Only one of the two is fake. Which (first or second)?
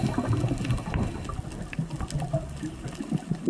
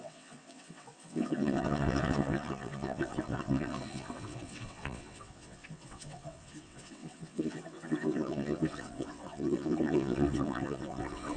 second